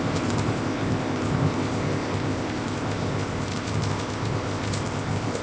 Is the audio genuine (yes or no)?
no